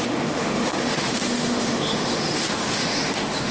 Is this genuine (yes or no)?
no